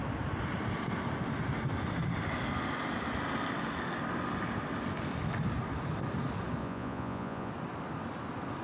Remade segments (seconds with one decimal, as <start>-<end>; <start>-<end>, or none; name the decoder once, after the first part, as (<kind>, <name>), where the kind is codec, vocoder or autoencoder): 6.6-7.5 (vocoder, Vocos)